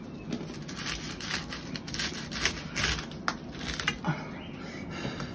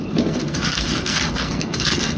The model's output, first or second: second